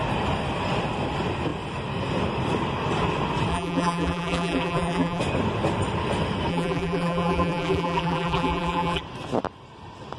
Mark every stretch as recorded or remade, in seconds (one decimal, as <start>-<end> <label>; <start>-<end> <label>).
0.0-3.5 recorded; 3.5-5.2 remade; 5.2-6.5 recorded; 6.5-9.0 remade; 9.0-10.2 recorded